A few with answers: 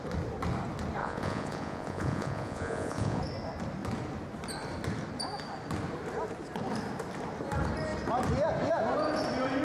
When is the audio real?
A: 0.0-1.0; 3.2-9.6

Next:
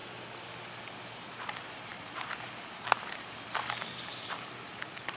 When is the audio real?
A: 0.0-1.1

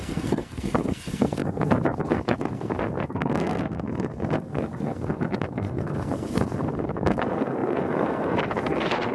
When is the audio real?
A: none

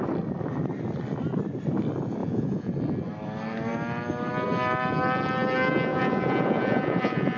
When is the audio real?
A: 0.0-2.2; 2.7-5.9

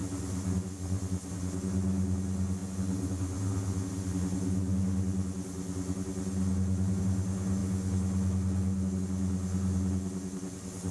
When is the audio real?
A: 0.0-10.9

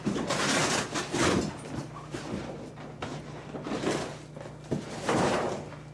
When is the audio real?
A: 0.0-5.9